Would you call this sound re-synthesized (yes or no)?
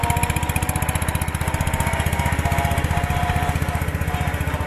no